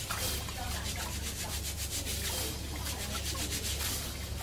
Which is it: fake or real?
real